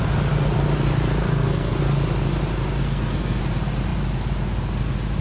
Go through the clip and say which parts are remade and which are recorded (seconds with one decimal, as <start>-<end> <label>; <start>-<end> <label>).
0.0-1.2 recorded; 1.2-1.8 remade; 1.8-2.8 recorded; 2.8-3.4 remade; 3.4-5.2 recorded